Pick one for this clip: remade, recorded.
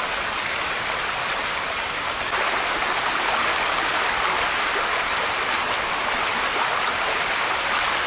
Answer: recorded